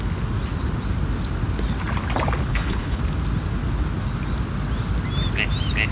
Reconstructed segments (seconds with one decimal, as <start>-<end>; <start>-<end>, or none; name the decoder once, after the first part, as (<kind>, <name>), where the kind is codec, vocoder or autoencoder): 2.5-3.0 (codec, HILCodec)